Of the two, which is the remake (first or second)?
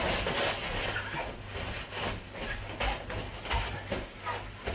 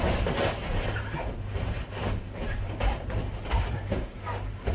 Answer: second